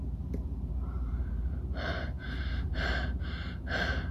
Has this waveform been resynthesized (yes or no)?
yes